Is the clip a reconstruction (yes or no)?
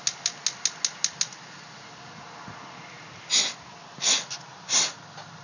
no